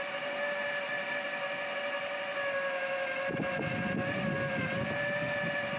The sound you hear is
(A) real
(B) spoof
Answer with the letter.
A